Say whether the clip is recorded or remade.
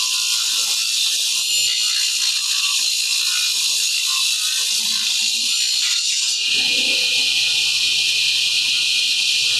recorded